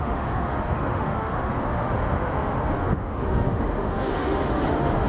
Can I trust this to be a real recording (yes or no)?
no